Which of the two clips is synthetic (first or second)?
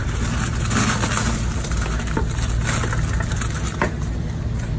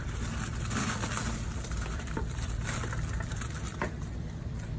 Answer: second